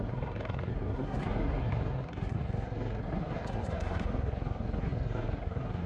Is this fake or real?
fake